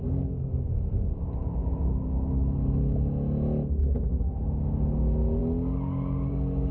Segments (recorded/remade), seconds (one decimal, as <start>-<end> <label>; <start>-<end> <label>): 0.0-6.7 recorded